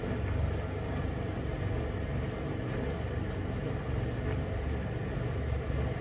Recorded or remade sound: recorded